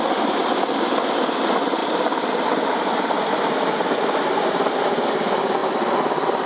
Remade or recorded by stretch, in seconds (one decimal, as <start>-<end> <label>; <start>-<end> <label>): 0.0-1.8 recorded; 1.8-4.7 remade; 4.7-5.6 recorded; 5.6-6.5 remade